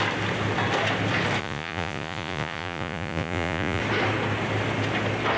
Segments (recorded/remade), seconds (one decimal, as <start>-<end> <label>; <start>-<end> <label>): 0.0-1.4 recorded; 1.4-3.8 remade; 3.8-5.4 recorded